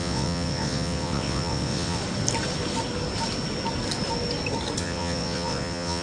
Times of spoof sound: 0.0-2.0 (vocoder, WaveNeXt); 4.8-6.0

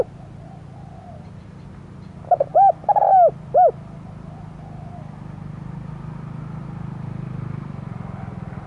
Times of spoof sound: none